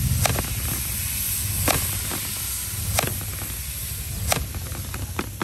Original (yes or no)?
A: yes